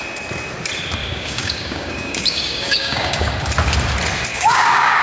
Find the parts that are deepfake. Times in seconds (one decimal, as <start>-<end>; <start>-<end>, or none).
1.0-3.3; 4.3-5.0